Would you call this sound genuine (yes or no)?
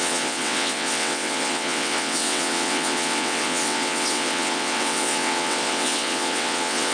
no